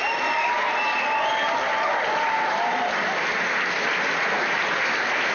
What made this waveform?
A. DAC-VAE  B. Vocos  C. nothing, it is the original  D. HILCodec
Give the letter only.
C